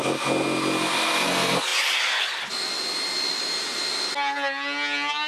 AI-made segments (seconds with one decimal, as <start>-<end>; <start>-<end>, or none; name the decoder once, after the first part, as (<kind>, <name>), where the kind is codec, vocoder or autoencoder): none